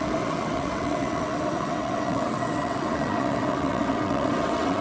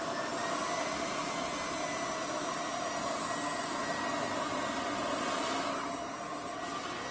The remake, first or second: first